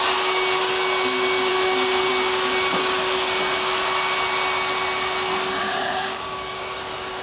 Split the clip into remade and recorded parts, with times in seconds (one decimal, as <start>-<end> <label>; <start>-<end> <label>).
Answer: 0.0-5.6 recorded; 5.6-6.8 remade; 6.8-7.2 recorded